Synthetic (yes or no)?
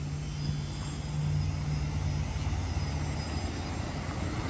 no